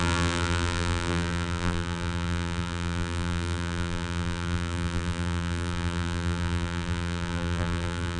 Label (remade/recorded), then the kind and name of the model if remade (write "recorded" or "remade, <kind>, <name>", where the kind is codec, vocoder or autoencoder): remade, vocoder, BigVGAN v2